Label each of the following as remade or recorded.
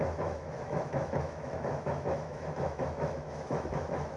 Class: remade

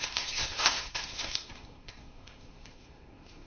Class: remade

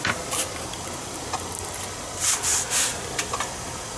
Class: recorded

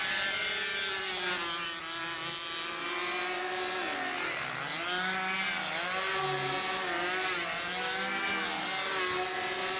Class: recorded